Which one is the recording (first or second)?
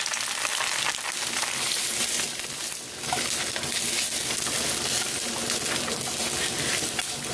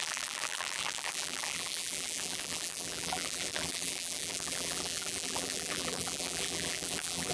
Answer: first